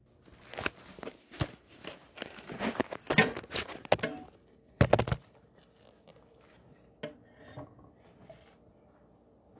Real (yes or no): yes